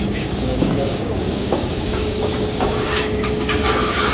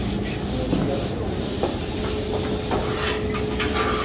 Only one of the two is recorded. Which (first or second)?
second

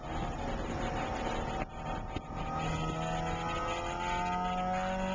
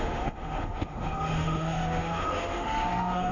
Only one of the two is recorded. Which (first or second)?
first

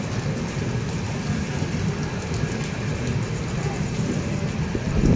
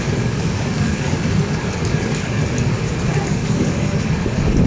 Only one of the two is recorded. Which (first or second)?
first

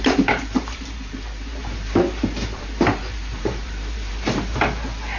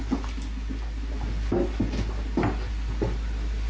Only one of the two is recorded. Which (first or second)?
second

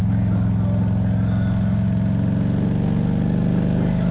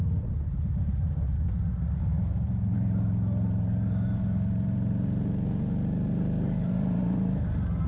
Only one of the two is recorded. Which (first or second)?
first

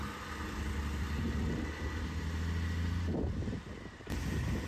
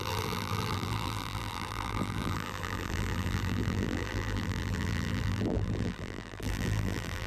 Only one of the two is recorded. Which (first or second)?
first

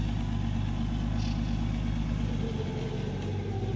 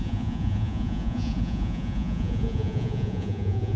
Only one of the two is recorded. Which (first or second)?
first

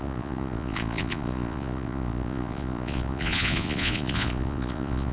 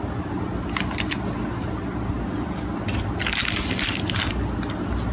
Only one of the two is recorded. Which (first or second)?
second